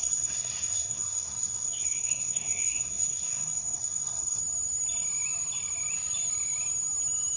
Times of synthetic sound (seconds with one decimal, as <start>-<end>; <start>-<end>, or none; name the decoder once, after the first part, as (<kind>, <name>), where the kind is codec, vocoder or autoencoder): 0.0-4.4 (codec, SNAC)